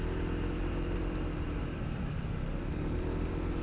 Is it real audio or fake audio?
real